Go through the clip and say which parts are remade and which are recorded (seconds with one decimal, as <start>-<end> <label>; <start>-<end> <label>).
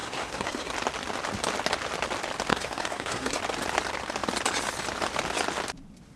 0.0-0.7 remade; 0.7-2.5 recorded; 2.5-3.4 remade; 3.4-6.2 recorded